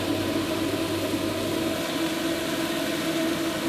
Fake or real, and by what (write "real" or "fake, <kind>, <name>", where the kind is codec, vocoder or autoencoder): real